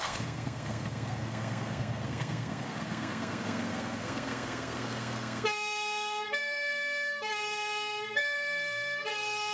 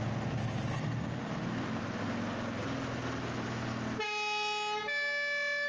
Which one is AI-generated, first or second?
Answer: first